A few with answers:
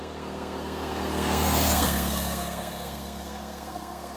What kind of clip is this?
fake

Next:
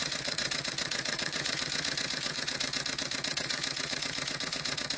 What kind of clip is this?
fake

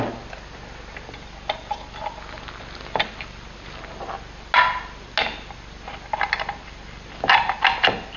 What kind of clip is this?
real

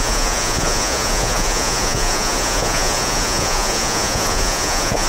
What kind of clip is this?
fake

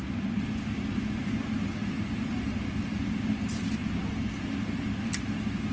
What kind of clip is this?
real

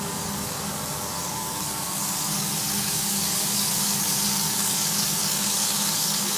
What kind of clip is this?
fake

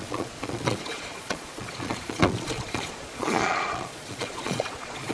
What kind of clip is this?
fake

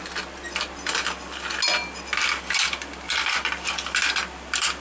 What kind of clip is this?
real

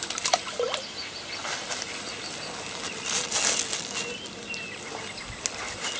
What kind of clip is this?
real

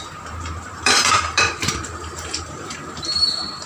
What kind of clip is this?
fake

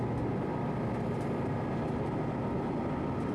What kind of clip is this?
real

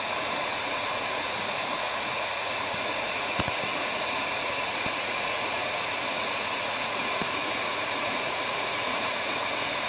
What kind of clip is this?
fake